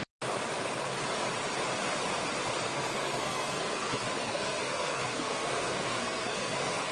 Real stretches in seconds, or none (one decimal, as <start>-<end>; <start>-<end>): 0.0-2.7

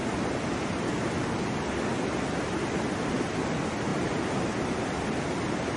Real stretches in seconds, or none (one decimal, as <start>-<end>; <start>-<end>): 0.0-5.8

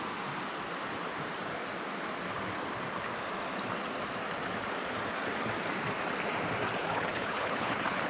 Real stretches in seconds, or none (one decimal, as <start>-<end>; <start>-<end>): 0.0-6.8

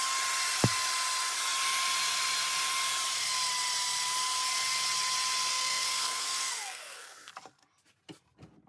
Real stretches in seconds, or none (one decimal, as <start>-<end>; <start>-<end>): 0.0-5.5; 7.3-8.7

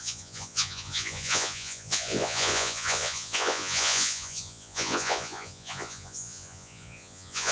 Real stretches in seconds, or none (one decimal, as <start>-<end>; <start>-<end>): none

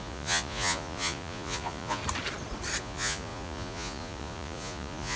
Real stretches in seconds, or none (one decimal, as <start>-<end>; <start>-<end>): 2.0-2.8

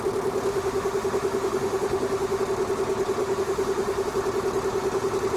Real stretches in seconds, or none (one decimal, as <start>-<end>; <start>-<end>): 0.0-0.5; 2.4-3.2; 4.1-5.4

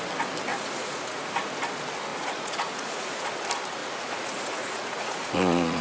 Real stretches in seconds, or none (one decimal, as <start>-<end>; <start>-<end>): 0.0-0.5; 1.3-2.1; 3.3-3.8